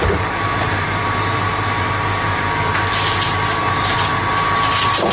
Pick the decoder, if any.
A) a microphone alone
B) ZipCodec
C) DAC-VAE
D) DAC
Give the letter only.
A